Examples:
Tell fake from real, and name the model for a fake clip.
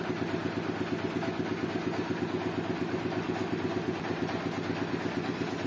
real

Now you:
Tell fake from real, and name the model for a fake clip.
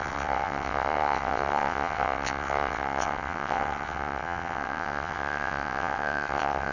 fake, vocoder, WaveNeXt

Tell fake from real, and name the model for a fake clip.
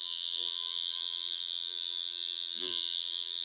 fake, vocoder, BigVGAN v2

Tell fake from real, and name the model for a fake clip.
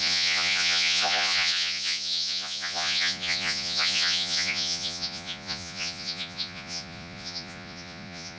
fake, vocoder, Vocos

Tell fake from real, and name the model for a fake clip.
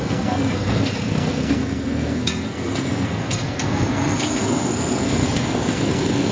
fake, codec, SNAC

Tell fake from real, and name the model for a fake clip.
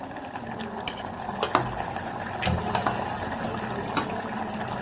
real